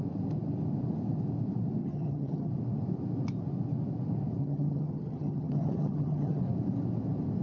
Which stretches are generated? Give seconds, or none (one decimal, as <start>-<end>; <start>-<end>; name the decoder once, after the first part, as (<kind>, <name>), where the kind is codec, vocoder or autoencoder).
1.8-2.5 (vocoder, HiFi-GAN); 4.4-6.4